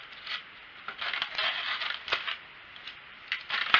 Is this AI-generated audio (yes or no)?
no